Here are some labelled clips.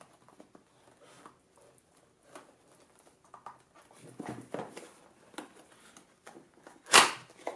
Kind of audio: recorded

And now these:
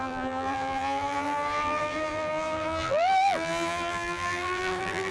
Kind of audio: remade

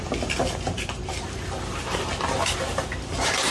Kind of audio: recorded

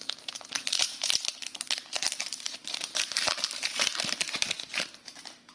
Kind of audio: remade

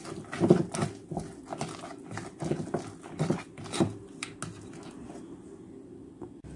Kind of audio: recorded